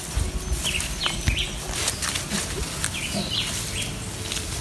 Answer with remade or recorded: recorded